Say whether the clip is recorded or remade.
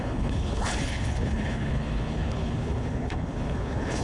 remade